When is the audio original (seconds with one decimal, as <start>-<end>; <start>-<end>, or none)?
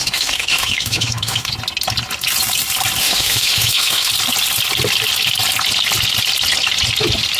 1.5-3.0; 4.1-7.4